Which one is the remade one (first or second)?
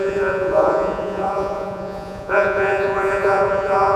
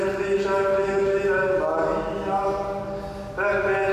first